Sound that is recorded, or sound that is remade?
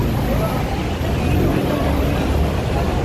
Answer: recorded